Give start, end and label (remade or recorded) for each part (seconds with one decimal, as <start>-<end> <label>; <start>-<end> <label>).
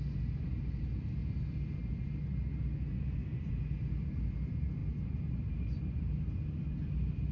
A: 0.0-7.3 recorded